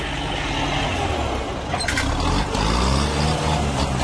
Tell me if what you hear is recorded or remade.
recorded